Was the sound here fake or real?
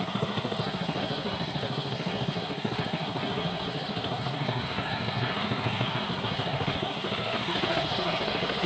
fake